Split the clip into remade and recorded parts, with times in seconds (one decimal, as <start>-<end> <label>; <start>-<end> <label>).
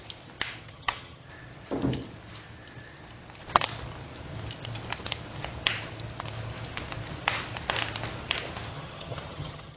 0.0-0.6 recorded; 0.6-1.3 remade; 1.3-8.7 recorded; 8.7-9.8 remade